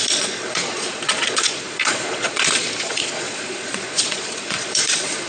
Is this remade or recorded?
remade